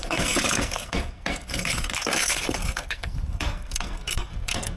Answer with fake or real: fake